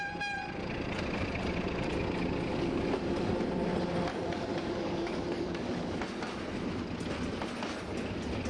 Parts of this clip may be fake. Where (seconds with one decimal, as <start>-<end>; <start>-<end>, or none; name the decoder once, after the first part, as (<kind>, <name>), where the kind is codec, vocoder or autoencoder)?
2.5-3.3 (codec, DAC); 4.1-6.0